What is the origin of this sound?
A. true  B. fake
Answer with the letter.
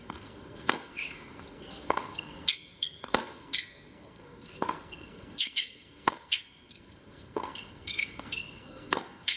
B